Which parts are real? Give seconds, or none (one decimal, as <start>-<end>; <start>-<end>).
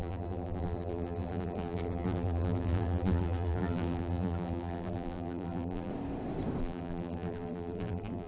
5.9-6.6